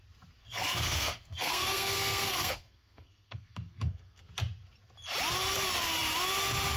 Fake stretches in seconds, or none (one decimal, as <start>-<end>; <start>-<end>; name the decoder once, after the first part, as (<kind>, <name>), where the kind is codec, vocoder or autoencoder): 0.4-4.3 (codec, SNAC)